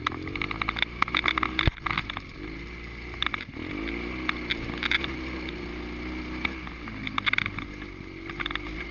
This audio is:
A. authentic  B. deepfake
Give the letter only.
A